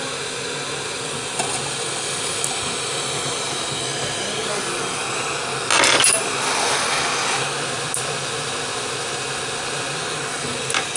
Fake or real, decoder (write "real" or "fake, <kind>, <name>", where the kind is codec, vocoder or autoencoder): real